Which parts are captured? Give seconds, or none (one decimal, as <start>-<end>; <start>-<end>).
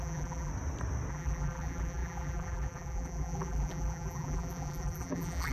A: 0.5-1.1